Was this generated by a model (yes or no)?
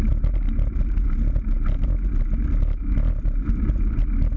no